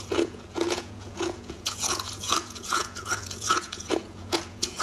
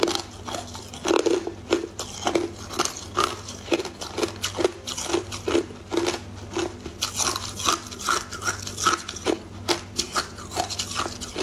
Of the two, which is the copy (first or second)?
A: first